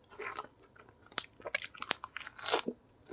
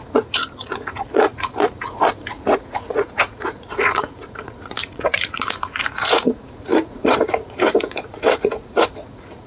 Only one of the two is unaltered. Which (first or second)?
first